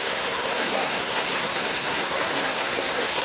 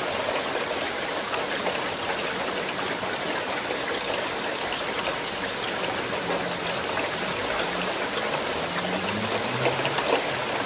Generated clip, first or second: first